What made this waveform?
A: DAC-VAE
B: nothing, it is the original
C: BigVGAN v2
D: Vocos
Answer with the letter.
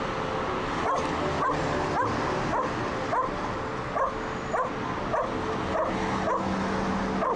B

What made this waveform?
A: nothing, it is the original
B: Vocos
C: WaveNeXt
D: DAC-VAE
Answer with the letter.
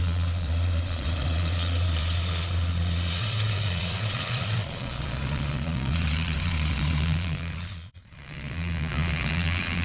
B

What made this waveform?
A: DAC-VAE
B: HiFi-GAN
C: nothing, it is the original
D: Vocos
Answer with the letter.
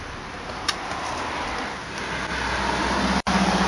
C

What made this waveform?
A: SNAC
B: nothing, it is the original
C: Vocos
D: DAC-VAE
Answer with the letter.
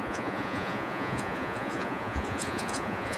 C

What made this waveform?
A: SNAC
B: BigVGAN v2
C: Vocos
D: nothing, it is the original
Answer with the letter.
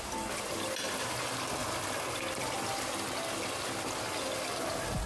D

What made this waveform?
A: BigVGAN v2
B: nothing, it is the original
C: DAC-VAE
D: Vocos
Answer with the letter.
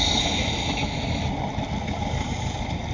B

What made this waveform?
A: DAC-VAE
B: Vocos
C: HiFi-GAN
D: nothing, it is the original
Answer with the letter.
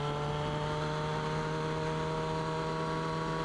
D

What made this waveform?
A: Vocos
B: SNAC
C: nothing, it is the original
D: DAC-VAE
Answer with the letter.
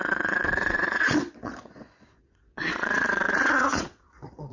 A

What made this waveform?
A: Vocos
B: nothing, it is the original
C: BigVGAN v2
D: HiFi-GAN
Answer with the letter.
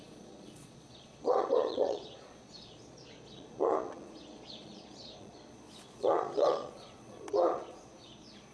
A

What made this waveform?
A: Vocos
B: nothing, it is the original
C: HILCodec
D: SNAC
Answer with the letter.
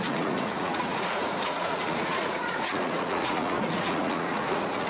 A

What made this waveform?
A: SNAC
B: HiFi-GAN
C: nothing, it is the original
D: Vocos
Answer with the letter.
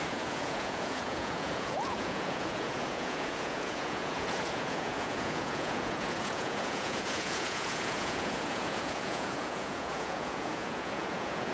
D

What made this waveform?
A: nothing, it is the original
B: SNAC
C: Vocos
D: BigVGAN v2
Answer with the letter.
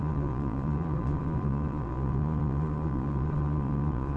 C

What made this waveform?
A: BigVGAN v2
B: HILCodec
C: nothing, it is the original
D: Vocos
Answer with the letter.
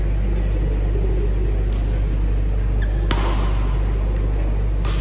C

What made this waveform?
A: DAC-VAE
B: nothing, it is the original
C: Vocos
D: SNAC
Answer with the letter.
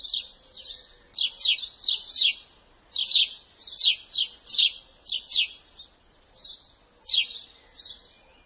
B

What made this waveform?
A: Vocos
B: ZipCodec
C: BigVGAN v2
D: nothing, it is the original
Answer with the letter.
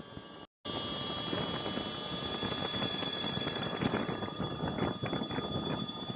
D